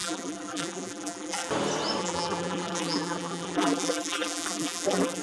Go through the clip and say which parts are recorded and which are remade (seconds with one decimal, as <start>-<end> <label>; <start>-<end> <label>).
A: 0.0-1.5 remade; 1.5-2.0 recorded; 2.0-5.2 remade